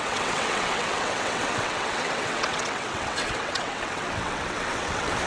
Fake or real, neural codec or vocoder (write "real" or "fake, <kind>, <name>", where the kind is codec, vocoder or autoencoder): fake, vocoder, WaveNeXt